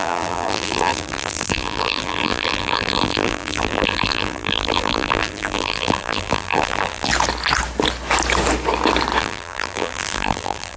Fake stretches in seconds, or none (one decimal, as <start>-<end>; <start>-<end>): 0.0-7.1; 9.2-10.8